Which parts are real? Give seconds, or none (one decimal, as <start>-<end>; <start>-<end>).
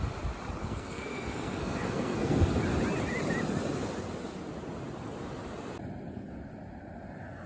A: 0.0-0.6; 2.6-7.5